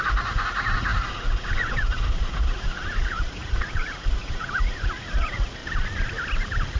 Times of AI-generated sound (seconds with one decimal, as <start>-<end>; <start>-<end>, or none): 0.0-5.6